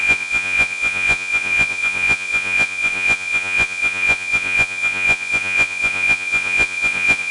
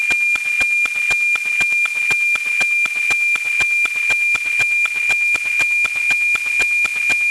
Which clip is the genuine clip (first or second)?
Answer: second